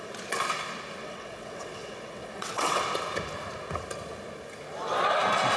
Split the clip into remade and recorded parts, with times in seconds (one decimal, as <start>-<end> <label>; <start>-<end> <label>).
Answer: 0.0-1.0 recorded; 1.0-2.8 remade; 2.8-5.6 recorded